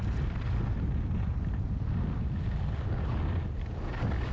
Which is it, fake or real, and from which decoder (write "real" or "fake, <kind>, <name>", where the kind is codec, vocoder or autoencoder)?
real